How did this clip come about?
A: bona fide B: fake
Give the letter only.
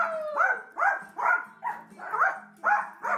A